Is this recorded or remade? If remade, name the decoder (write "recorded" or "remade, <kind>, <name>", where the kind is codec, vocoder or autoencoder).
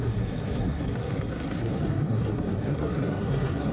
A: remade, codec, SNAC